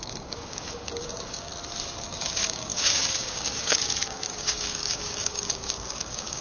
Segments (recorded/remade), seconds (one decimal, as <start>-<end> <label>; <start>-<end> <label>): 0.0-1.5 remade; 1.5-2.1 recorded; 2.1-6.4 remade

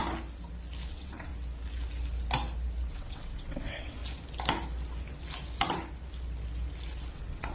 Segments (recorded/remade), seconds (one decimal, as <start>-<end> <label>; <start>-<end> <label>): 0.0-0.9 recorded; 0.9-1.3 remade; 1.3-2.9 recorded; 2.9-4.0 remade; 4.0-7.1 recorded; 7.1-7.5 remade

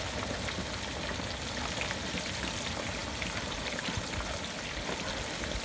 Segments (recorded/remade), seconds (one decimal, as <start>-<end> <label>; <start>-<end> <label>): 0.0-5.6 recorded

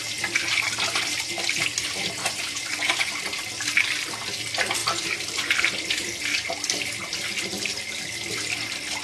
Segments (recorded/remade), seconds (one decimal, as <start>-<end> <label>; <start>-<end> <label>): 0.0-2.2 recorded; 2.2-3.1 remade; 3.1-9.0 recorded

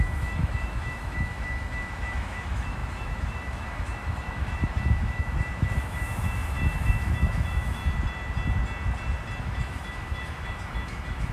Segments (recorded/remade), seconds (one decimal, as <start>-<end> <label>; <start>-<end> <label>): 0.0-7.8 remade; 7.8-9.4 recorded; 9.4-11.3 remade